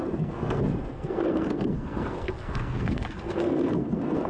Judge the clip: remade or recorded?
remade